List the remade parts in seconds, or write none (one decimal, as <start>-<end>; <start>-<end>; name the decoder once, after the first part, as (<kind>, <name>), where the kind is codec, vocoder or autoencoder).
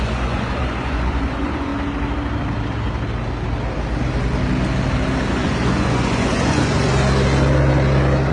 0.0-1.7 (vocoder, Vocos); 5.3-6.9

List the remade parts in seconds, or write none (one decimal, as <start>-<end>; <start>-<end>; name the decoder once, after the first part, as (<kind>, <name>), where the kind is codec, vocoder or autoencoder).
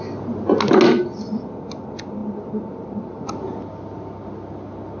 none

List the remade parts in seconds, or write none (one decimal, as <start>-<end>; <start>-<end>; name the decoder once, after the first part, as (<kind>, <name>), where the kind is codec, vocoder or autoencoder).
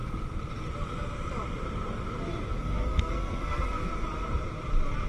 2.6-3.9 (codec, SNAC)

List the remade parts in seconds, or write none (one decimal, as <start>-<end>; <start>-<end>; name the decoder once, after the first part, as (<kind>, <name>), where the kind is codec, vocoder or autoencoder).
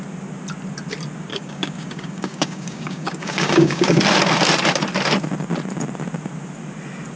1.3-4.0 (codec, DAC)